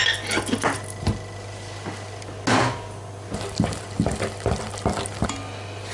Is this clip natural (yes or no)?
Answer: yes